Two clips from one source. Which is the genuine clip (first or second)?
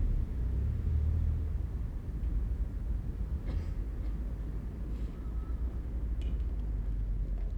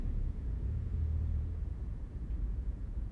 first